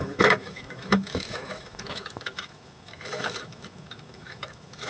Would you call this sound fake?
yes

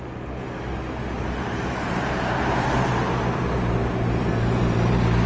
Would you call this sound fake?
no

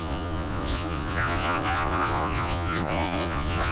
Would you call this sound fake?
yes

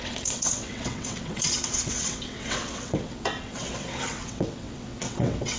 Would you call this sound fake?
yes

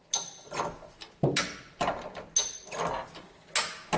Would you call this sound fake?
no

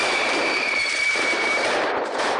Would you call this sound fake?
yes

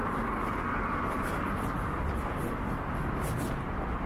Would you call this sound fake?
no